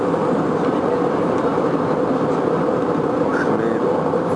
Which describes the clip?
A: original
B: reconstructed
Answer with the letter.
B